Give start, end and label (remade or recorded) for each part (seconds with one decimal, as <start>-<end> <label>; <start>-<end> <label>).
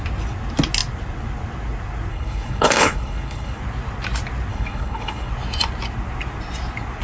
0.0-2.1 recorded; 2.1-3.6 remade; 3.6-4.5 recorded; 4.5-5.3 remade; 5.3-7.0 recorded